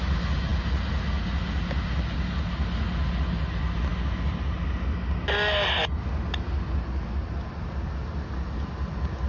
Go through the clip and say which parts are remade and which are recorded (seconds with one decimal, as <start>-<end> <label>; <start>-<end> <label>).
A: 0.0-9.3 recorded